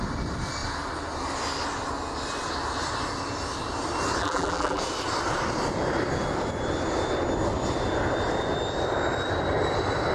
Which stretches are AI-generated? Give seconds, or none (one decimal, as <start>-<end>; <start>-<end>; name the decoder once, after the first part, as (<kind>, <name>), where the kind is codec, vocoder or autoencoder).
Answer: 4.2-4.8 (vocoder, BigVGAN v2)